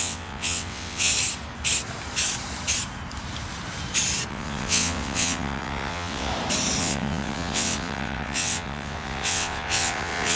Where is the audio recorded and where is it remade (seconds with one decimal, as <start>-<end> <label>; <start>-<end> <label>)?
0.0-1.1 remade; 1.1-4.3 recorded; 4.3-6.3 remade; 6.3-6.8 recorded; 6.8-10.4 remade